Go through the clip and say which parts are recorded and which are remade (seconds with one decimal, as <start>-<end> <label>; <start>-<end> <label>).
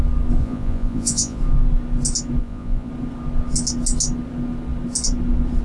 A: 0.0-0.4 recorded; 0.4-1.4 remade; 1.4-2.4 recorded; 2.4-2.9 remade; 2.9-5.6 recorded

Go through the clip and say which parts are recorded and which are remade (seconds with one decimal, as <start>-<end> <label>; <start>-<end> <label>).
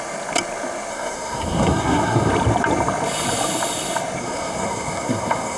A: 0.0-0.9 recorded; 0.9-2.3 remade; 2.3-4.2 recorded; 4.2-5.6 remade